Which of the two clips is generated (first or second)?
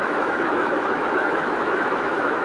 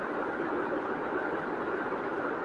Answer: first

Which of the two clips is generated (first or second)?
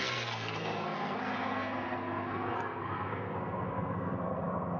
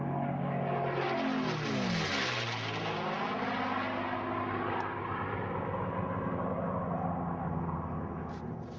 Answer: first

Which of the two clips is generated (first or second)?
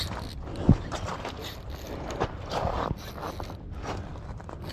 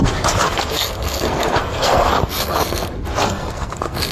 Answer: second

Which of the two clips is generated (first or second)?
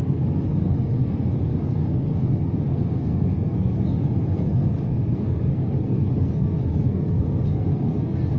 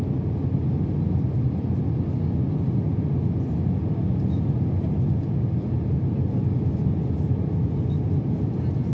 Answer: first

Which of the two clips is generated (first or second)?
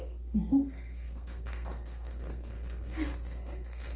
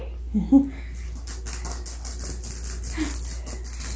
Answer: first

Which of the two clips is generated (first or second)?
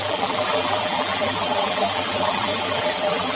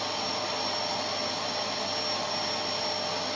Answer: first